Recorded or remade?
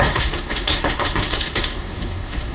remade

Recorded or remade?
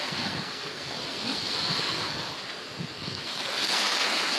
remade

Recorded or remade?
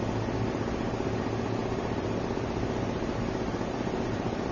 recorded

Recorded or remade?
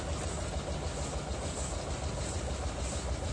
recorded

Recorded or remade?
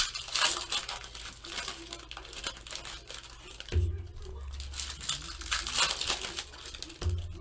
recorded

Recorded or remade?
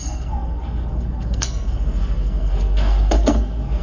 remade